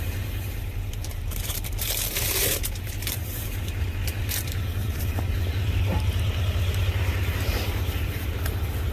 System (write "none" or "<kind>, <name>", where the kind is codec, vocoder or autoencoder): vocoder, BigVGAN v2